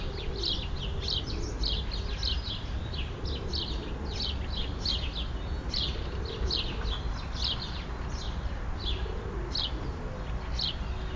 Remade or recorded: recorded